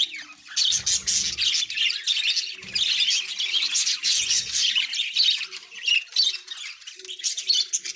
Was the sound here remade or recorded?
recorded